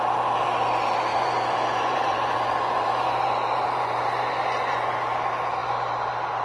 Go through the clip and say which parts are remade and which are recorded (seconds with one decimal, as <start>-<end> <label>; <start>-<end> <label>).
0.0-1.1 recorded; 1.1-4.9 remade; 4.9-6.4 recorded